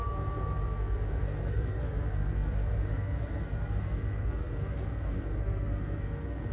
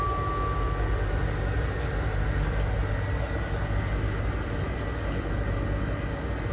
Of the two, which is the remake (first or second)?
first